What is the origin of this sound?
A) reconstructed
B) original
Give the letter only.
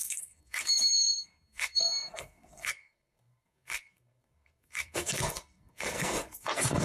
A